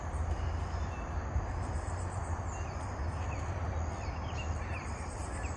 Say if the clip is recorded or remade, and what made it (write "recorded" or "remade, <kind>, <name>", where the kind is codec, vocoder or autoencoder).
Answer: recorded